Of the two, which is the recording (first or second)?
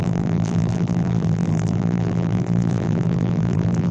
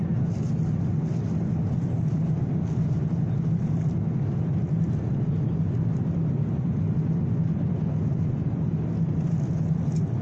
second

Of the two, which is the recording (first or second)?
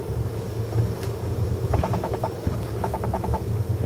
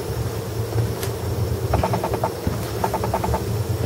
second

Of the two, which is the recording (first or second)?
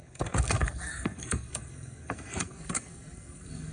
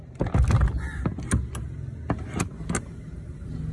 second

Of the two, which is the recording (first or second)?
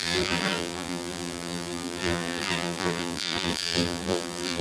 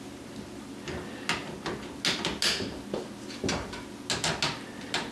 second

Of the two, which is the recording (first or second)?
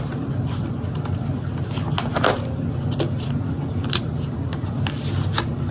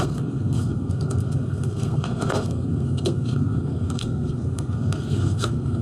first